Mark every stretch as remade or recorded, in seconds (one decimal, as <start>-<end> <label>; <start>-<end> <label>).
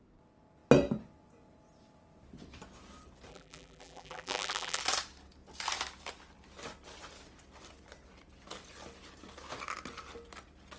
0.0-3.3 recorded; 3.3-4.8 remade; 4.8-10.8 recorded